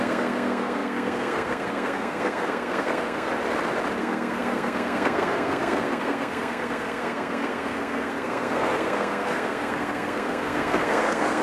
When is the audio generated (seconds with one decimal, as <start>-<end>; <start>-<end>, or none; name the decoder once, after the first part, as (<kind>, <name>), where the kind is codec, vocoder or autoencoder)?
0.0-3.3 (codec, SNAC); 4.0-11.4